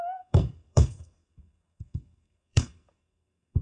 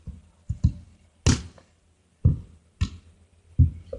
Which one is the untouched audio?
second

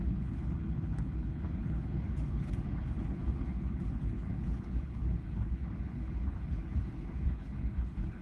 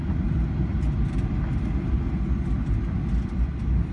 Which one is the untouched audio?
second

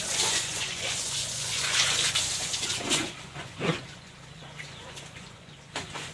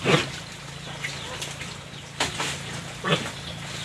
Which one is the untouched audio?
second